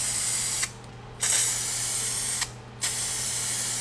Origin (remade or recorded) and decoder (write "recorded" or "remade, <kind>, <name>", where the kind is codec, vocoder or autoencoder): recorded